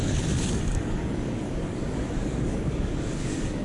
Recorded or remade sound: remade